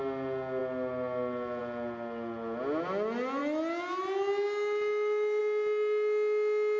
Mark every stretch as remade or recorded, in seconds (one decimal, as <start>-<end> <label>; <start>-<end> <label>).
0.0-6.8 recorded